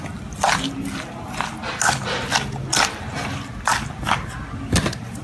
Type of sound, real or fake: real